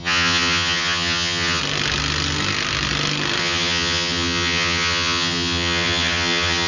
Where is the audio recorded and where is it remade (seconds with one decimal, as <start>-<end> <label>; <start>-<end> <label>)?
0.0-1.6 remade; 1.6-3.4 recorded; 3.4-6.7 remade